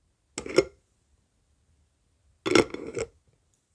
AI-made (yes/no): no